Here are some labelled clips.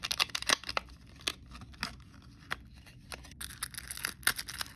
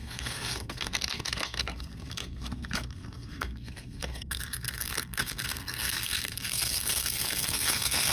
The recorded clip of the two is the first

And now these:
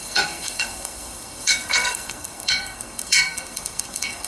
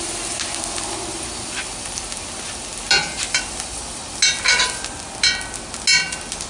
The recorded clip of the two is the second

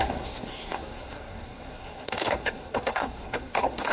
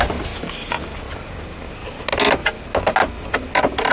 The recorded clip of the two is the second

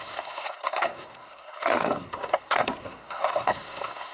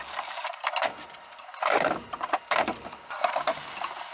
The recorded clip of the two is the second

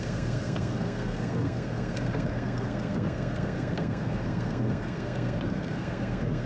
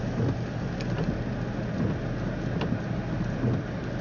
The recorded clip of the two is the second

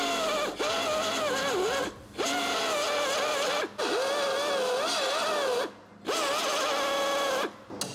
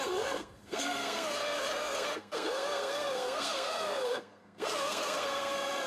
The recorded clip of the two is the first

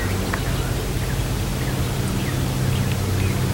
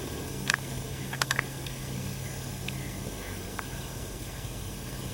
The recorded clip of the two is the first